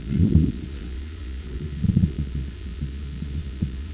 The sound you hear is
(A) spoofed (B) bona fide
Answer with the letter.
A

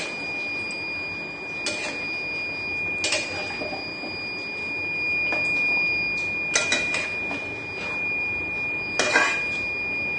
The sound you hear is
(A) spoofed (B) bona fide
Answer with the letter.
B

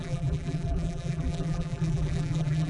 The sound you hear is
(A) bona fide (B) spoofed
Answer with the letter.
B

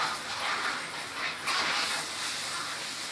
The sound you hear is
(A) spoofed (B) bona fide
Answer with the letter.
B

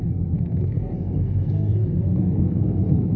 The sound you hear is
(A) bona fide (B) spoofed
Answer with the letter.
B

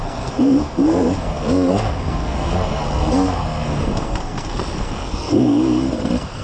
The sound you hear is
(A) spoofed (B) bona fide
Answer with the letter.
A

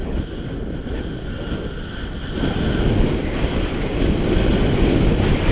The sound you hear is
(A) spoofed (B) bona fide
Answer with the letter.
B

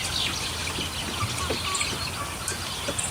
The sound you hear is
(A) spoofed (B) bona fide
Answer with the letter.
B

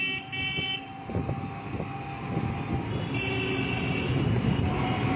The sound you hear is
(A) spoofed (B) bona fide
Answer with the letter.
B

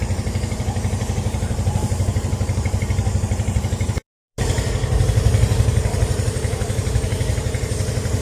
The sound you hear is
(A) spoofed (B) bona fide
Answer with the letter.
A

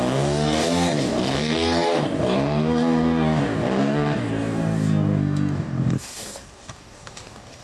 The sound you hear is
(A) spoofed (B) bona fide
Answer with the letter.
A